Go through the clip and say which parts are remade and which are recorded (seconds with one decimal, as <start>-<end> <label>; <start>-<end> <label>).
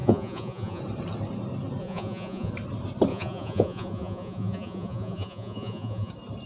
0.0-0.8 remade; 0.8-1.8 recorded; 1.8-2.5 remade; 2.5-3.1 recorded; 3.1-6.1 remade; 6.1-6.5 recorded